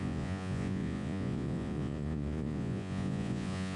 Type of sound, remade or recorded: remade